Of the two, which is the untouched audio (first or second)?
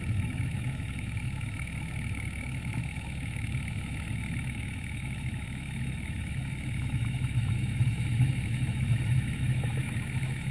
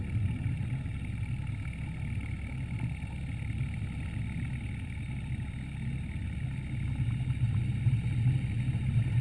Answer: second